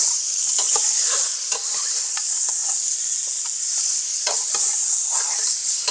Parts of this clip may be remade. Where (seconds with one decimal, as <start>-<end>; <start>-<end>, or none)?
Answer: 2.6-3.6